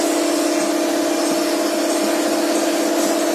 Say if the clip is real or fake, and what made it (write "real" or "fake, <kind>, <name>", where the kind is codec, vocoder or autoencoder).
real